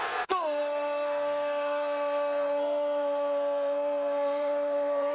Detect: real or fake fake